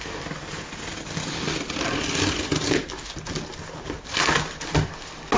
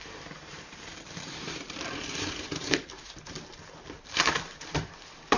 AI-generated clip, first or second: second